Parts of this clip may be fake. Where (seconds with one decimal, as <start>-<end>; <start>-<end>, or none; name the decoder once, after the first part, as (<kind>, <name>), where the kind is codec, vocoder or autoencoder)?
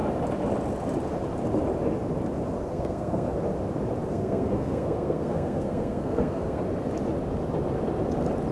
2.7-3.3 (codec, SNAC); 4.1-6.6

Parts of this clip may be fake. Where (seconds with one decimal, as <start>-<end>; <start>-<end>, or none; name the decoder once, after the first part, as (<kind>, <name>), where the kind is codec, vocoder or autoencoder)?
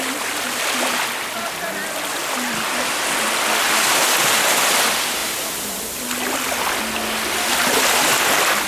none